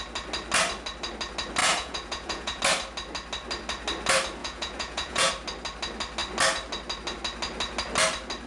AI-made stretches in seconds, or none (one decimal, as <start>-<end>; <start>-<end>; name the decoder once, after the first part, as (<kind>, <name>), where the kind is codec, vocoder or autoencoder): 1.6-2.6 (vocoder, Vocos); 4.4-5.3